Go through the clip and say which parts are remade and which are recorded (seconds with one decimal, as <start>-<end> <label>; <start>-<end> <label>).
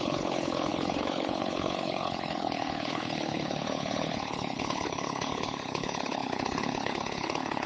0.0-7.7 remade